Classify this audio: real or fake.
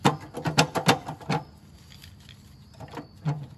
real